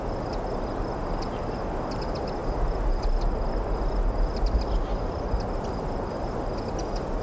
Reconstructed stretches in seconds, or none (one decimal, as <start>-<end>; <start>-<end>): none